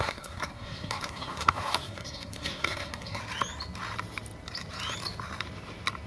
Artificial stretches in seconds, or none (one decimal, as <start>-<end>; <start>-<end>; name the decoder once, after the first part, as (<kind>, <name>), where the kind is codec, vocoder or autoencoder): 0.0-3.2 (codec, SNAC)